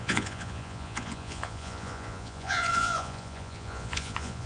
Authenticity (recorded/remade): remade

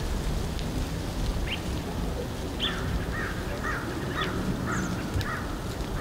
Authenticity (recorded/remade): recorded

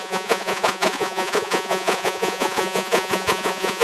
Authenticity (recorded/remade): remade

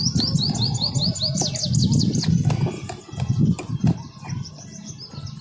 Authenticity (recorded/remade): recorded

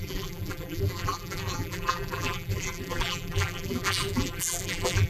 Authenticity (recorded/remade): remade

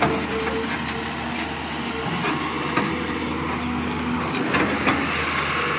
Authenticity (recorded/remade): recorded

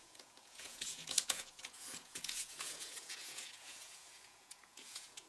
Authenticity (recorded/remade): remade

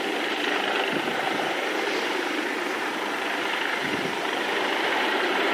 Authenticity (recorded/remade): remade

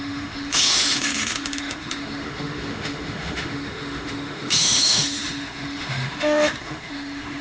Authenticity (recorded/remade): remade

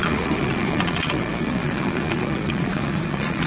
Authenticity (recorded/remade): remade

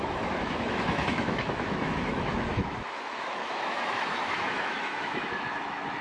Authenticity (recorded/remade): remade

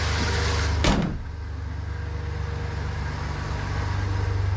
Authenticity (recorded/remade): recorded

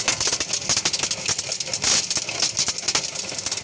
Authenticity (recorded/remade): recorded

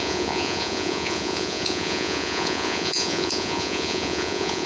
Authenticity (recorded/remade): remade